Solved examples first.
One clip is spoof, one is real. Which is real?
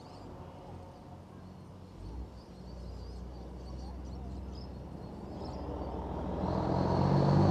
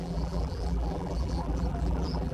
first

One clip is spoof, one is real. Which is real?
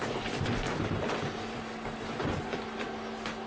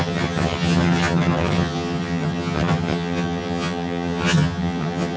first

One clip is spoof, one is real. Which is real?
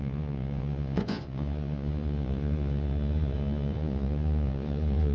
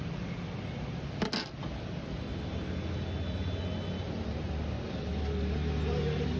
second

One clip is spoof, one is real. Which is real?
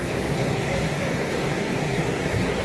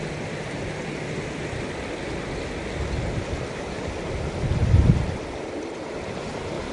second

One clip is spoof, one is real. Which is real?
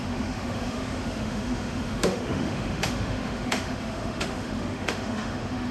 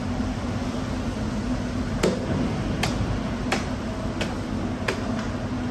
second